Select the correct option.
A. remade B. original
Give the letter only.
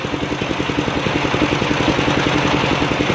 B